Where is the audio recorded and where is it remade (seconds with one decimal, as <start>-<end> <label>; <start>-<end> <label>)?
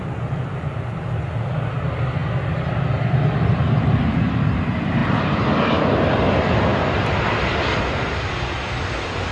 0.0-5.0 recorded; 5.0-5.5 remade; 5.5-6.7 recorded; 6.7-7.3 remade; 7.3-9.3 recorded